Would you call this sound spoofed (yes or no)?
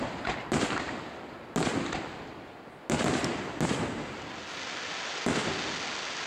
no